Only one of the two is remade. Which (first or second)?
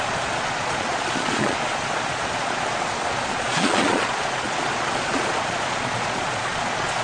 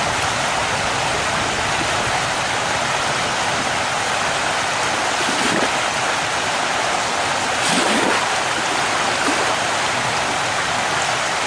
first